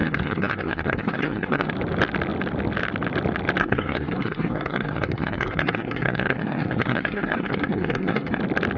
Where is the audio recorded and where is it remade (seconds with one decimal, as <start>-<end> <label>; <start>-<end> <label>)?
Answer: 0.0-1.7 remade; 1.7-3.6 recorded; 3.6-8.4 remade; 8.4-8.8 recorded